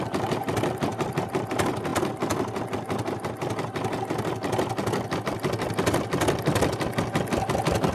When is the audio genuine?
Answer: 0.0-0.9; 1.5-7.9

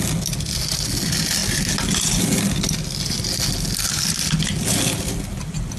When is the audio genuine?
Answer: 0.0-5.8

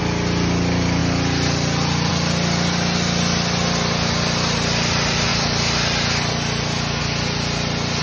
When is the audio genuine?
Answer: 0.0-8.0

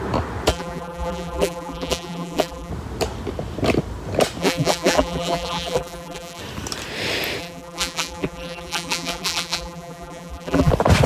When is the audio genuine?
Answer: 0.0-0.5; 2.7-4.4; 6.4-7.4; 10.7-11.1

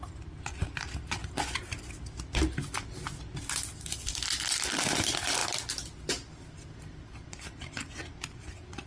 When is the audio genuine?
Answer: 0.0-8.9

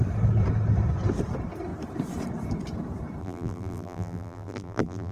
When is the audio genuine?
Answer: 0.0-3.2